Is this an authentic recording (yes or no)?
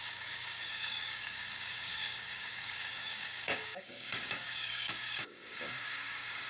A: no